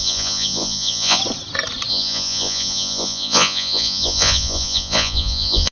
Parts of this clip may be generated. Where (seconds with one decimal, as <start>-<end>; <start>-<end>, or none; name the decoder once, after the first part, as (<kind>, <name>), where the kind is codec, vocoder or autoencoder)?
0.0-1.2 (vocoder, Vocos); 1.9-5.7